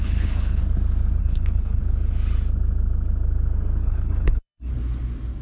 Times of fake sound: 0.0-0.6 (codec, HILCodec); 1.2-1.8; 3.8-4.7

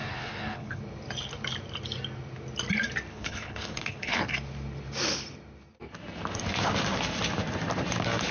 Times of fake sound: 0.0-0.8 (codec, HILCodec); 3.1-4.2

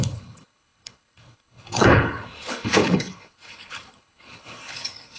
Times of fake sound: 0.0-5.2 (codec, HILCodec)

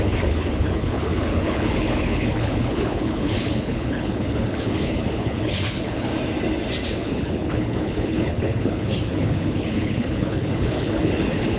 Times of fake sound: 0.0-6.1 (codec, HILCodec); 6.9-11.6

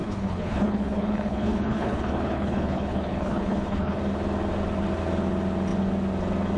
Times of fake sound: 0.0-4.0 (codec, HILCodec)

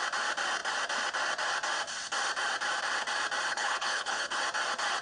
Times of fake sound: 3.5-4.4 (codec, HILCodec)

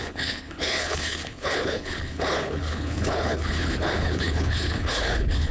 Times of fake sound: 0.0-5.5 (codec, HILCodec)

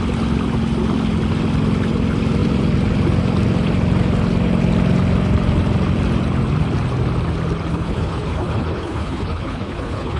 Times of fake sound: 7.7-10.2 (codec, HILCodec)